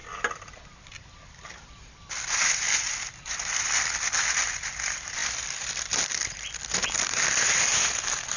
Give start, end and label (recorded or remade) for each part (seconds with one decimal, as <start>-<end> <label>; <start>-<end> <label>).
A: 0.0-8.4 remade